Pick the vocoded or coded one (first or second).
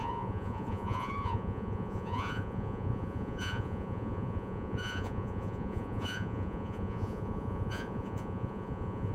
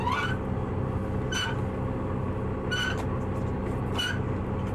first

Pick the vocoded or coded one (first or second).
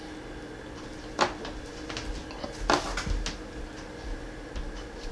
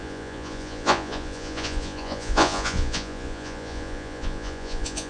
second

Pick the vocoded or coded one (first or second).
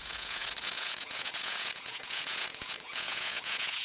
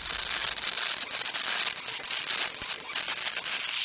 first